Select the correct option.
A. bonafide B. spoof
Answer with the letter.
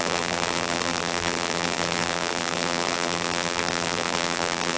B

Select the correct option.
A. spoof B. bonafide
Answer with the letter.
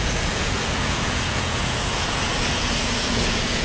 A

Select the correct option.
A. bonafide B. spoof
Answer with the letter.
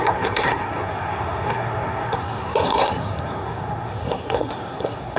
B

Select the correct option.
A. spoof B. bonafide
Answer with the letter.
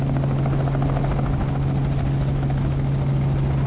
B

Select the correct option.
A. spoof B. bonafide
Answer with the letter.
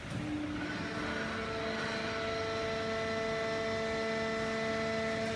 B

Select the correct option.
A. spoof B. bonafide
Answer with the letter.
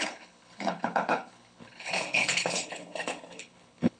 A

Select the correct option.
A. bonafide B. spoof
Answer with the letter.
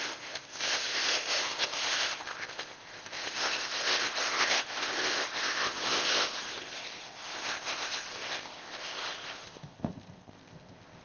B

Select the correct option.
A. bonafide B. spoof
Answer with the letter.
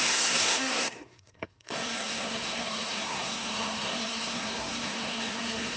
B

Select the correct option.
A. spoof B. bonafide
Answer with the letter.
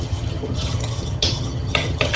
A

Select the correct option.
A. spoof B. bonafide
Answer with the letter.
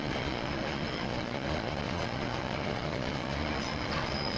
A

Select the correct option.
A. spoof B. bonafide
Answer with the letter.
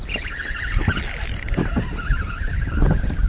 B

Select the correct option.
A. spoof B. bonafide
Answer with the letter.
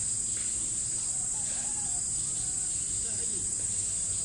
B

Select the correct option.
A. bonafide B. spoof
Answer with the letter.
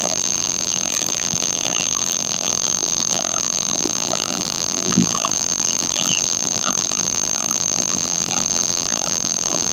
B